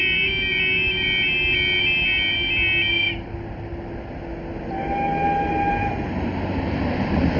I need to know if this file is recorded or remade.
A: recorded